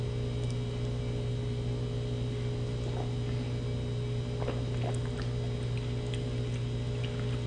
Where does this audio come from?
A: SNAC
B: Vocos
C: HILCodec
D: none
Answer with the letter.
D